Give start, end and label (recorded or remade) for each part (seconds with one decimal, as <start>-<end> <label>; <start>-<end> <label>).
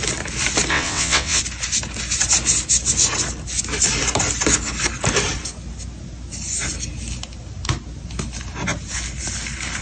0.0-0.7 recorded; 0.7-1.4 remade; 1.4-9.8 recorded